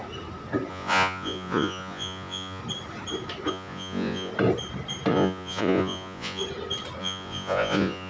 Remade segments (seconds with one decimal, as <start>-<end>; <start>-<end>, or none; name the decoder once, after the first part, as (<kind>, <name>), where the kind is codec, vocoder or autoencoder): 0.7-2.6 (vocoder, Vocos); 3.5-4.3; 5.1-6.4; 7.0-8.1